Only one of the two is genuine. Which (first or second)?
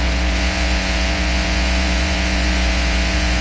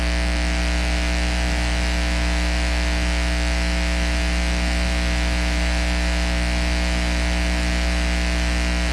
second